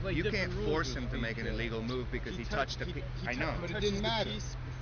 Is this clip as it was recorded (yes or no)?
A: yes